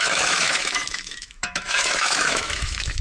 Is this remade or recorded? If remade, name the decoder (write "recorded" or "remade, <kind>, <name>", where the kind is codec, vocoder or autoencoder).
remade, autoencoder, DAC-VAE